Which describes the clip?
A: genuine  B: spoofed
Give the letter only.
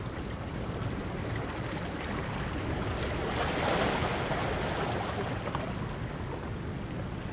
A